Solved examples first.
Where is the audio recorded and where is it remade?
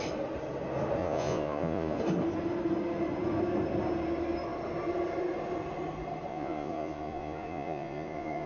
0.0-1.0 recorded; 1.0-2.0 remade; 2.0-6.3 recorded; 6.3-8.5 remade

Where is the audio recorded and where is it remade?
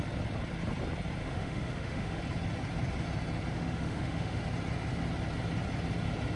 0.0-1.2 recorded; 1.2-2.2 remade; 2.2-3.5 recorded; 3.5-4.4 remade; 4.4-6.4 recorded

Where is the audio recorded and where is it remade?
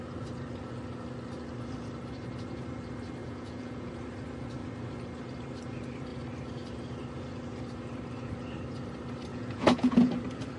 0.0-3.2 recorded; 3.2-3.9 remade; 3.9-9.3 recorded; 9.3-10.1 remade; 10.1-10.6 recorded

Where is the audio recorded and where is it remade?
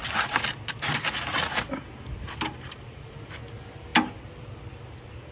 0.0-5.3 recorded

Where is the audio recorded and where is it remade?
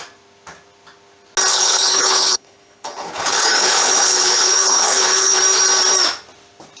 0.0-1.5 recorded; 1.5-5.4 remade; 5.4-6.8 recorded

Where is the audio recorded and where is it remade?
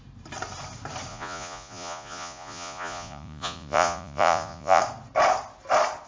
0.0-1.1 recorded; 1.1-4.8 remade; 4.8-6.1 recorded